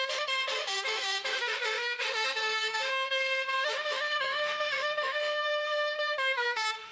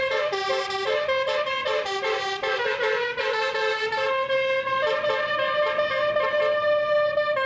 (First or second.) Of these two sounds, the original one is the second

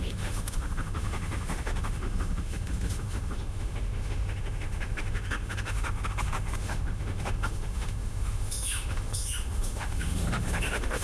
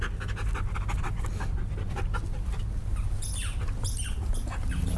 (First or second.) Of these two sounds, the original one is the second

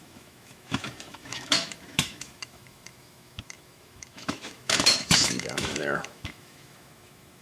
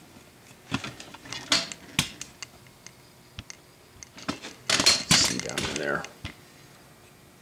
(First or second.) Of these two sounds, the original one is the second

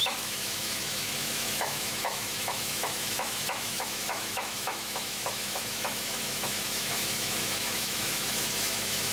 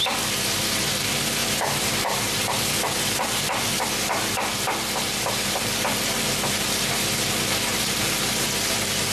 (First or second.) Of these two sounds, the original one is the second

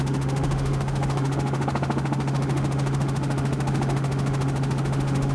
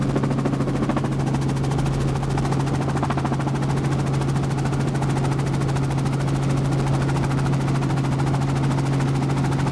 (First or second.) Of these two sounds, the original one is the second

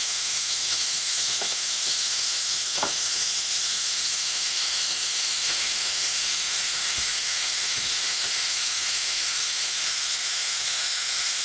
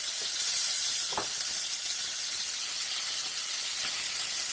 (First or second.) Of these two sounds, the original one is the second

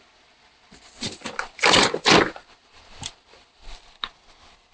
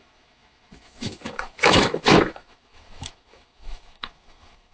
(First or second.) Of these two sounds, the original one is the first